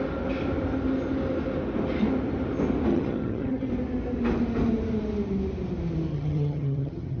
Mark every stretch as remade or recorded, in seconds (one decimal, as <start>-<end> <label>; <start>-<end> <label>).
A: 0.0-2.9 recorded; 2.9-3.7 remade; 3.7-6.1 recorded; 6.1-7.2 remade